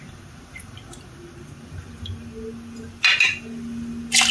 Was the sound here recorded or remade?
recorded